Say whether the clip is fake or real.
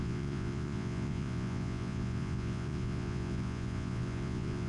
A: fake